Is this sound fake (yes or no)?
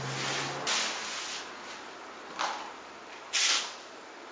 no